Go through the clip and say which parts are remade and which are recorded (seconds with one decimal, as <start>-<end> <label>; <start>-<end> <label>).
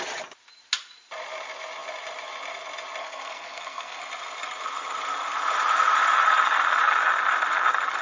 0.0-3.0 recorded; 3.0-4.0 remade; 4.0-8.0 recorded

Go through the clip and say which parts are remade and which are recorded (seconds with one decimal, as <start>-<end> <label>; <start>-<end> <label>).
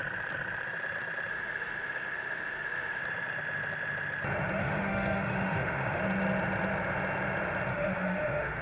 0.0-1.3 recorded; 1.3-3.0 remade; 3.0-4.6 recorded; 4.6-6.0 remade; 6.0-7.7 recorded; 7.7-8.6 remade